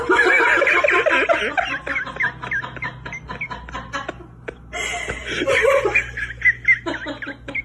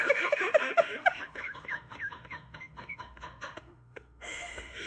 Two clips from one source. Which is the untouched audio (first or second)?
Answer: first